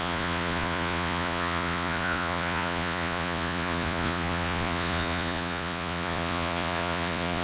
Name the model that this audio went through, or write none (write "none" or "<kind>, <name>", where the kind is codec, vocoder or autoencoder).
vocoder, Vocos